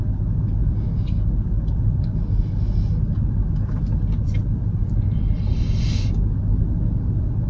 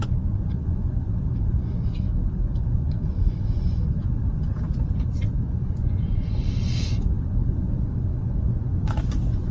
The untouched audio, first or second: first